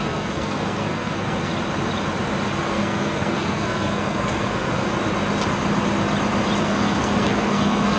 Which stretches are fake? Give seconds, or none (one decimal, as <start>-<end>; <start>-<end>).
0.0-1.5; 2.6-4.8; 6.6-8.0